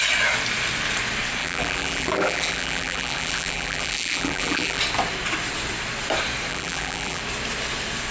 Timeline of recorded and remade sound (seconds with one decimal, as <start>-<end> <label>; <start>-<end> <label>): 0.0-1.4 recorded; 1.4-4.8 remade; 4.8-6.5 recorded; 6.5-7.2 remade; 7.2-8.1 recorded